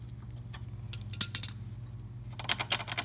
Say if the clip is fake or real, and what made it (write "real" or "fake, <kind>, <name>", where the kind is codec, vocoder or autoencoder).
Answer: real